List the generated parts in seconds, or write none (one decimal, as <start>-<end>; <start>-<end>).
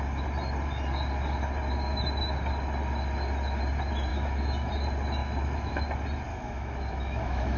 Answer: 4.1-4.7; 5.2-5.8; 6.3-7.6